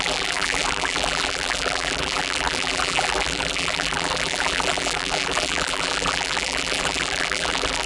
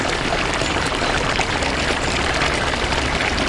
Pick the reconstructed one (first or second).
first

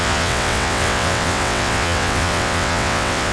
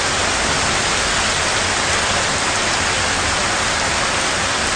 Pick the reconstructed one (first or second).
first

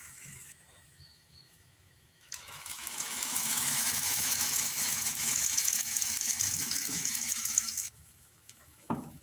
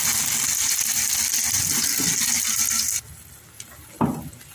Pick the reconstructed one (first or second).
first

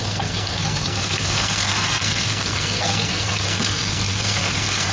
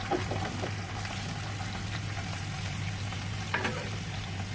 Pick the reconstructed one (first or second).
first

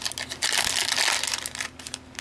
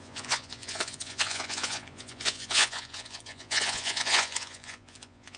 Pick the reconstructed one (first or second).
second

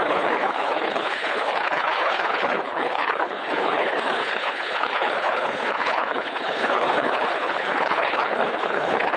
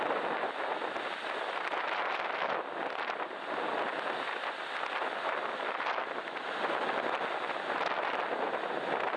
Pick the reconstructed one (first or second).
first